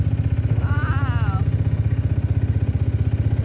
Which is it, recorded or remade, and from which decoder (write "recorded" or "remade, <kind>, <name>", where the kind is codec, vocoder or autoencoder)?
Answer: recorded